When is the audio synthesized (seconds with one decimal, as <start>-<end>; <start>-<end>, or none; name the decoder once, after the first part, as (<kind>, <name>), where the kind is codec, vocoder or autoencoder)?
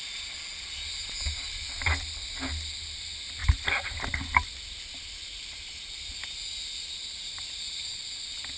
3.4-4.0 (vocoder, BigVGAN v2)